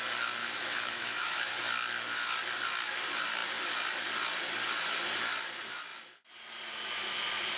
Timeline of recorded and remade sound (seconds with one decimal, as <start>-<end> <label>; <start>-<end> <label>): 0.0-0.4 recorded; 0.4-1.6 remade; 1.6-7.6 recorded